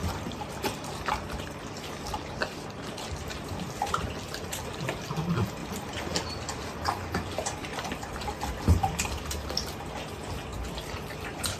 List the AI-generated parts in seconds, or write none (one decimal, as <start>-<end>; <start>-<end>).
0.0-4.1; 5.6-7.9